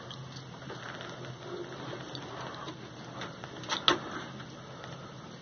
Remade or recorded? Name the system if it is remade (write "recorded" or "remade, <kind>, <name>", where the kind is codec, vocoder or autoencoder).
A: recorded